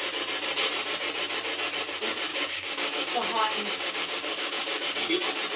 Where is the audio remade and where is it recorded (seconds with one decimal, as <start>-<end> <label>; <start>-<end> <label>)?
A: 0.0-2.3 recorded; 2.3-5.1 remade; 5.1-5.6 recorded